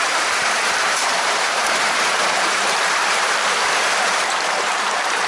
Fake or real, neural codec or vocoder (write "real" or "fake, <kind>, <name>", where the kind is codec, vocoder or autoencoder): fake, vocoder, BigVGAN v2